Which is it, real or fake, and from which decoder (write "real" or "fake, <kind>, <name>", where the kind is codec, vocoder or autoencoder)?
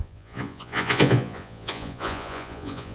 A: fake, vocoder, Vocos